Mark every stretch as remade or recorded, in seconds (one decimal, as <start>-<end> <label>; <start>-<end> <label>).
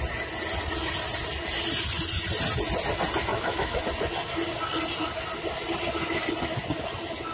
0.0-3.3 recorded; 3.3-3.8 remade; 3.8-7.3 recorded